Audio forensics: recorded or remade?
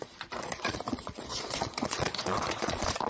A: remade